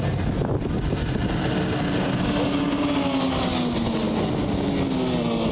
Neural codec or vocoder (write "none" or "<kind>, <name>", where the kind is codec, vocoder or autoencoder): none